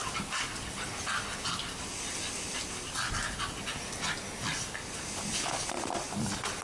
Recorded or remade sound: recorded